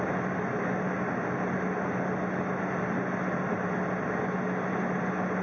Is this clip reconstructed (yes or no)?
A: no